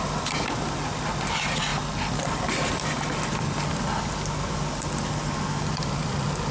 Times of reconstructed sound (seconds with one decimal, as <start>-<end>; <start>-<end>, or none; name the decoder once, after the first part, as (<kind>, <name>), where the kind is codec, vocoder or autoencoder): none